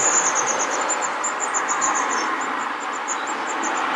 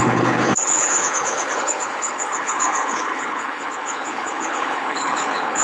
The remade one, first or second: second